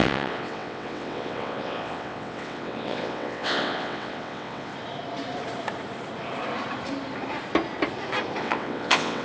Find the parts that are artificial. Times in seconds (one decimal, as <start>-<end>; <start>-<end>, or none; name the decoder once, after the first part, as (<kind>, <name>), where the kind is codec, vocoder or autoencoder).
0.0-4.7 (vocoder, WaveNeXt); 8.4-9.2